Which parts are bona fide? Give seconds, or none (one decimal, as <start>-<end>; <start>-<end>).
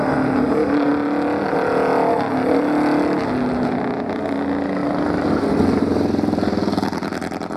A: 0.0-7.6